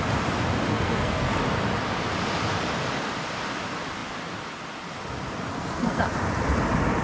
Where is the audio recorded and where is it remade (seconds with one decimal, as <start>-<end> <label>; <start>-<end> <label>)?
0.0-0.7 recorded; 0.7-1.4 remade; 1.4-5.5 recorded; 5.5-6.0 remade; 6.0-7.0 recorded